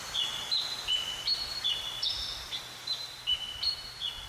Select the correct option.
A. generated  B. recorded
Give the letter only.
A